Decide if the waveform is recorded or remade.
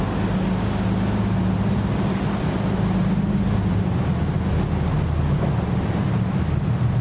recorded